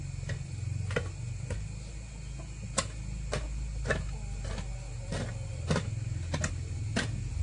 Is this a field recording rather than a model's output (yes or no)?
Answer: yes